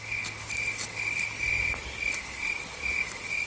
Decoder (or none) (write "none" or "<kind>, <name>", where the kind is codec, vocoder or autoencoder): none